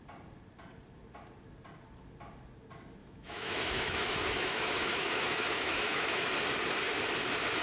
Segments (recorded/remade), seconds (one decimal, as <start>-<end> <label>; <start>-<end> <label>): 0.0-3.0 recorded; 3.0-6.3 remade; 6.3-7.6 recorded